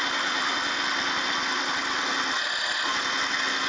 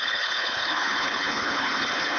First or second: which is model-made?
second